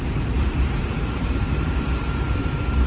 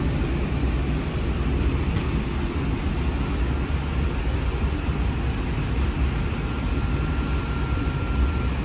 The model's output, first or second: first